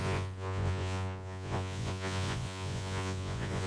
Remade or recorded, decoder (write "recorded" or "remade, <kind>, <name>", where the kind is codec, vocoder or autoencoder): remade, vocoder, Vocos